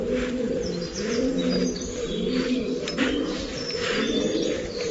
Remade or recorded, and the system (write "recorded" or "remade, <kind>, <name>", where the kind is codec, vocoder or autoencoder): remade, vocoder, BigVGAN v2